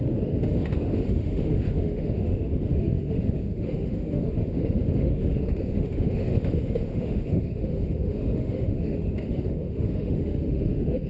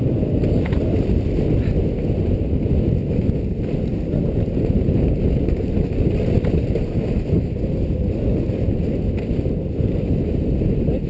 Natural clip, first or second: second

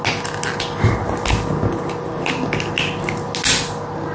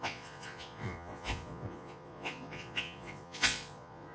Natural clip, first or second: first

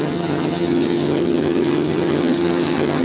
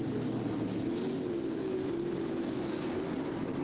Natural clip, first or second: second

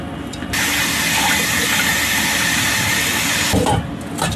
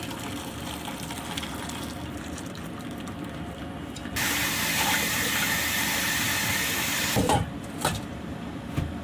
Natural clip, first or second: first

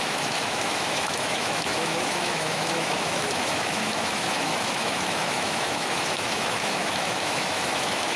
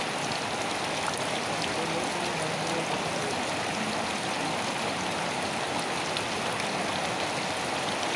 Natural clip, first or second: second